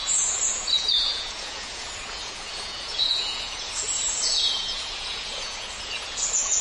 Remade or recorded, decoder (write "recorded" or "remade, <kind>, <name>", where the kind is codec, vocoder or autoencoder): remade, vocoder, Vocos